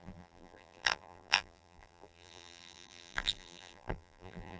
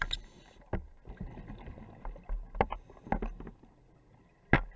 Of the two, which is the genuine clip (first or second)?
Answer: second